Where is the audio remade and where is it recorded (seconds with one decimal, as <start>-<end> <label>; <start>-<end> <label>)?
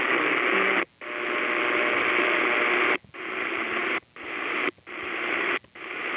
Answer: 0.0-6.2 recorded